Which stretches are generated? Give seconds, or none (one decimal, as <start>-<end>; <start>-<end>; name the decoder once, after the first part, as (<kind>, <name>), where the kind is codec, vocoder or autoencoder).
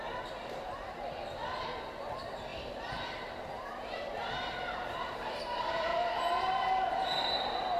0.0-1.4 (vocoder, BigVGAN v2); 2.0-7.8